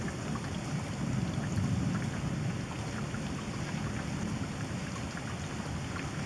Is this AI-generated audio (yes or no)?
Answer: no